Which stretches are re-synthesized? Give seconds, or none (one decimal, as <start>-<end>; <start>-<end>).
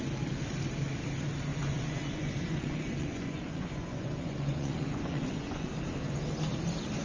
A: 1.5-5.7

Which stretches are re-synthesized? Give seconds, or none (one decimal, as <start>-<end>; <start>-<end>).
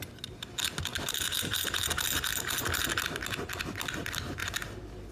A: none